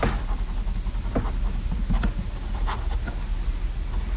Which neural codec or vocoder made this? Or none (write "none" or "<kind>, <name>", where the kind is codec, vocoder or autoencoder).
none